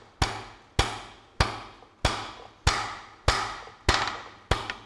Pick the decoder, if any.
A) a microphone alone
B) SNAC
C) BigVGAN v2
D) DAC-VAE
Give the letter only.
A